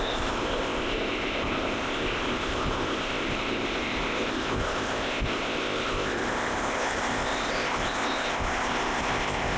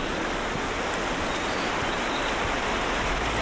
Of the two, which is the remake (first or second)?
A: first